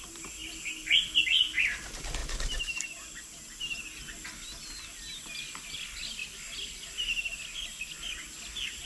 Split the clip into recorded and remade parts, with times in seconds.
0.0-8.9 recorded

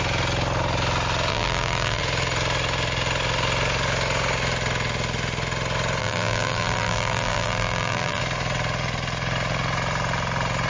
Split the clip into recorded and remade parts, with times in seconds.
0.0-1.3 recorded; 1.3-2.0 remade; 2.0-6.0 recorded; 6.0-8.2 remade; 8.2-10.7 recorded

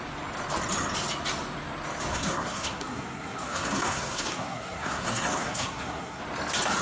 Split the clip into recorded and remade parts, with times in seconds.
0.0-2.1 recorded; 2.1-6.2 remade; 6.2-6.8 recorded

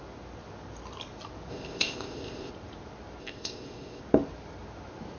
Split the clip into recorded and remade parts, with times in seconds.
0.0-1.5 recorded; 1.5-2.5 remade; 2.5-3.2 recorded; 3.2-4.0 remade; 4.0-5.2 recorded

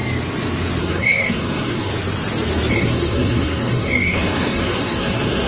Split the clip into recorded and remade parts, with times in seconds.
0.0-0.8 recorded; 0.8-1.9 remade; 1.9-2.7 recorded; 2.7-5.5 remade

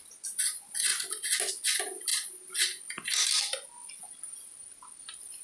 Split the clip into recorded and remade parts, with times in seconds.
0.0-5.4 recorded

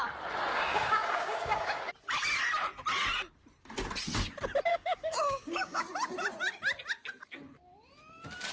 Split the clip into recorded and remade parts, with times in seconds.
0.0-0.5 recorded; 0.5-1.9 remade; 1.9-4.7 recorded; 4.7-5.8 remade; 5.8-8.5 recorded

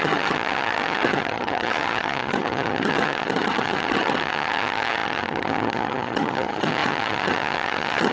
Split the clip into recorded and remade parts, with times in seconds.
0.0-8.1 remade